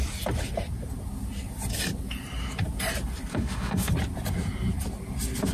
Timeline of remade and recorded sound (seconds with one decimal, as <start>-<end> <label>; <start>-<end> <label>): 0.0-3.3 recorded; 3.3-3.9 remade; 3.9-5.5 recorded